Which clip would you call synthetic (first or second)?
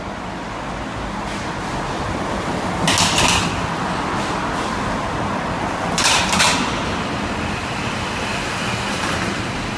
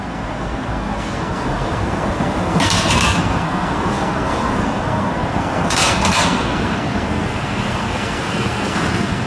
second